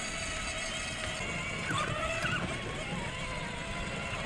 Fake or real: real